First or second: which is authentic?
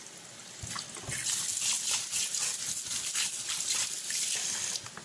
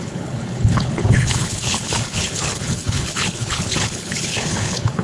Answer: first